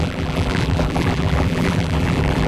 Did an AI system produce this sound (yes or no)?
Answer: yes